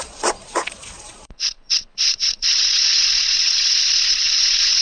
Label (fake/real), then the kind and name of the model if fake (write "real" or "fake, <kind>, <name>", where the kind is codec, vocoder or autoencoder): fake, vocoder, Vocos